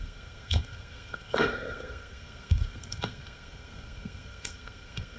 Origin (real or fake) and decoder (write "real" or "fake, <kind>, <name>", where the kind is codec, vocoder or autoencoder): fake, codec, SNAC